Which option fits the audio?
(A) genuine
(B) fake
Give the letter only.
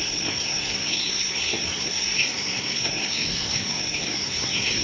B